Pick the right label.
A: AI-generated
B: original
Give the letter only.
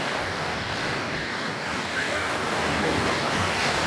A